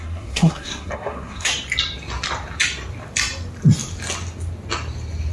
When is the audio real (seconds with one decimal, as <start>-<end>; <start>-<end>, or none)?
1.5-5.3